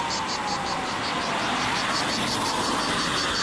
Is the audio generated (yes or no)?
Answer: no